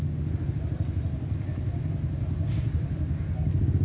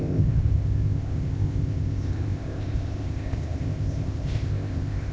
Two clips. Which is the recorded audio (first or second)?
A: first